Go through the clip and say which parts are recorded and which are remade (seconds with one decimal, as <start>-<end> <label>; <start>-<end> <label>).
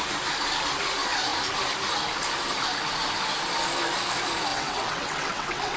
0.0-4.5 recorded; 4.5-5.8 remade